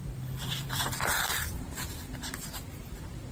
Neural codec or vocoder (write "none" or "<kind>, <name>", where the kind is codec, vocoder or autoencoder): vocoder, BigVGAN v2